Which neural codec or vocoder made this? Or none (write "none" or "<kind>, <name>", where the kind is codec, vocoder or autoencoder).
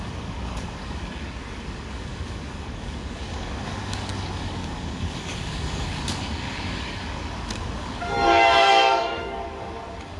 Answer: codec, DAC